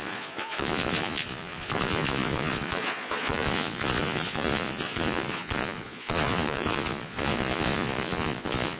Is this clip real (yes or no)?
no